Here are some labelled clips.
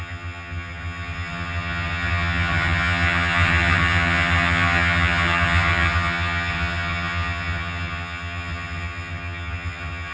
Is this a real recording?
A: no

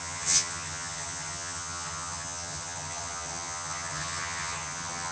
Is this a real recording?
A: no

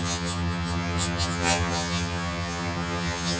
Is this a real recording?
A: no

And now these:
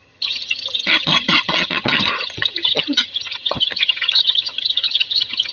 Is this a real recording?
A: no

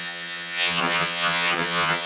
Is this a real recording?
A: no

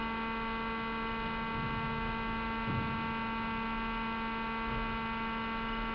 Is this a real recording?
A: yes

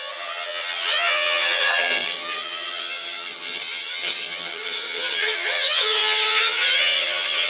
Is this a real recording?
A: no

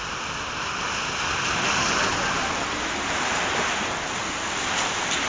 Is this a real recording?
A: yes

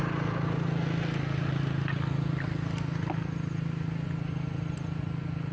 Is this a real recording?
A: yes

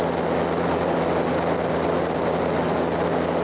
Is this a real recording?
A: yes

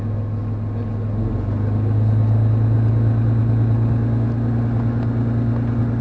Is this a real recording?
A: yes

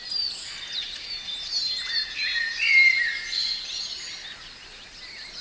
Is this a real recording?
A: yes